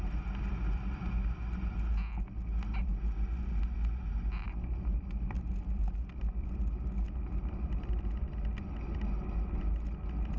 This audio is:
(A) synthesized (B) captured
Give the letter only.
B